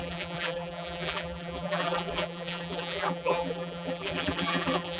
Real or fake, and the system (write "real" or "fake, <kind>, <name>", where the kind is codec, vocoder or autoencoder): fake, vocoder, BigVGAN v2